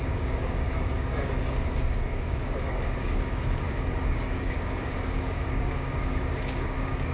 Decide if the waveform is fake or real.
fake